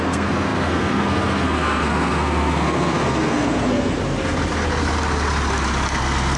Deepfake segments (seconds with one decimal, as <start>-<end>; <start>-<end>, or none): 0.0-4.0; 6.0-6.4